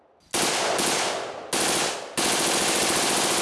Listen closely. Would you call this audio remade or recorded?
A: recorded